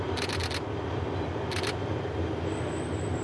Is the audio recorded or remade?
recorded